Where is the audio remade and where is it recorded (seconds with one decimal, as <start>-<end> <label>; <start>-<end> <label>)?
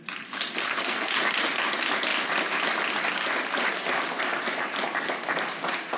0.0-0.6 recorded; 0.6-1.1 remade; 1.1-6.0 recorded